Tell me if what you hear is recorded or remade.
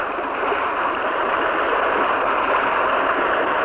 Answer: recorded